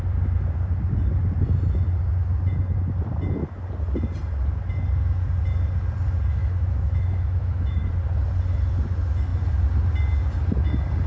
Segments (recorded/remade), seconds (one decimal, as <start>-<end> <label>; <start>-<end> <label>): 0.0-6.4 recorded; 6.4-7.9 remade; 7.9-11.1 recorded